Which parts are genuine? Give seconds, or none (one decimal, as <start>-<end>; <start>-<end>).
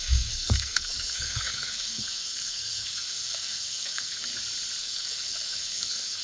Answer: 4.3-4.8